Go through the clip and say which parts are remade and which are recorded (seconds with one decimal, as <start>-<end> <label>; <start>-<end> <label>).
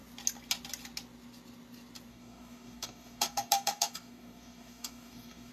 0.0-2.1 recorded; 2.1-5.5 remade